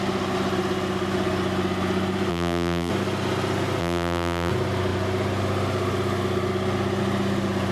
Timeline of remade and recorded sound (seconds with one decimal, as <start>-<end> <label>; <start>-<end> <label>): 0.0-2.3 recorded; 2.3-2.9 remade; 2.9-3.8 recorded; 3.8-4.5 remade; 4.5-7.7 recorded